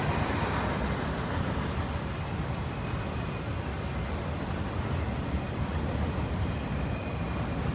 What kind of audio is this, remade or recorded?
recorded